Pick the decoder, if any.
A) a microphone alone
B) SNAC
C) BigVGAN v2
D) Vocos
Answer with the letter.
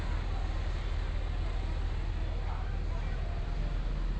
A